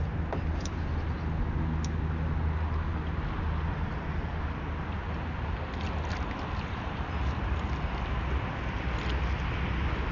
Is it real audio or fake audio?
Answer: real